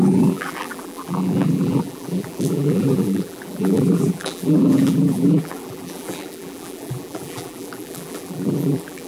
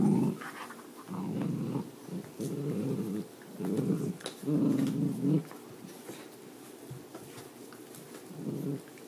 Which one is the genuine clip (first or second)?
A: second